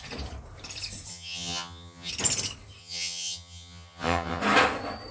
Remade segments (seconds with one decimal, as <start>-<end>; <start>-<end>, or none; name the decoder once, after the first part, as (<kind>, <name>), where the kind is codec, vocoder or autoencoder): 1.1-2.1 (vocoder, HiFi-GAN); 2.8-4.4